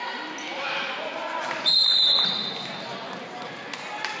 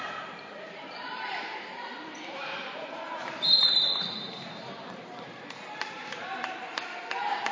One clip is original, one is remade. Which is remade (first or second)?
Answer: second